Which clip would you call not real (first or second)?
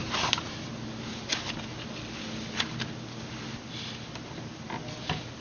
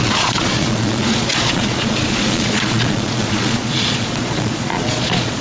second